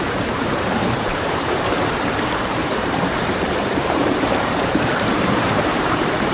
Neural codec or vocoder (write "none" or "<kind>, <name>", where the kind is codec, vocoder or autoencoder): vocoder, BigVGAN v2